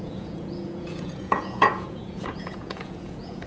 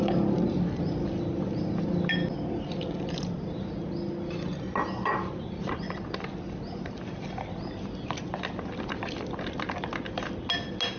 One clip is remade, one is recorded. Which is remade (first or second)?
first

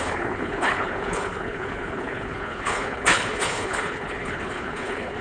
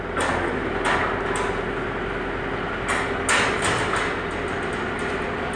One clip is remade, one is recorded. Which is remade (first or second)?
first